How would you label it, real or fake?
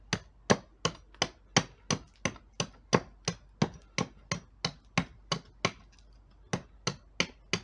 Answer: real